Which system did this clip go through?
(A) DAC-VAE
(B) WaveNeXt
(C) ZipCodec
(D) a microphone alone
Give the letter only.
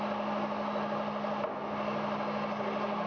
D